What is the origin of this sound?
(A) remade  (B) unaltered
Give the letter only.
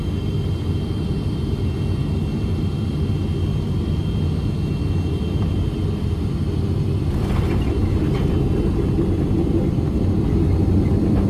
B